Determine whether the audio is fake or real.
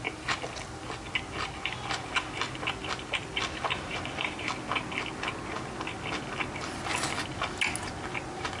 real